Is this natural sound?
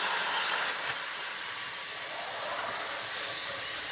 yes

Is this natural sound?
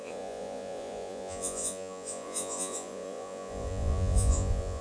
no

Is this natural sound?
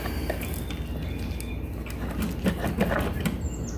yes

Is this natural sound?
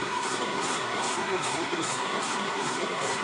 no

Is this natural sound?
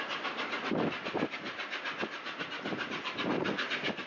yes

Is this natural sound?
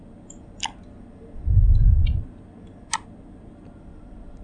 yes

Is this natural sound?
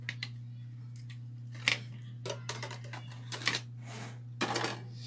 yes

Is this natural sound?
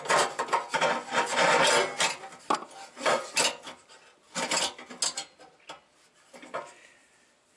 yes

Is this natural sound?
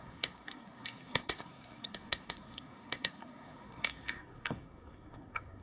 no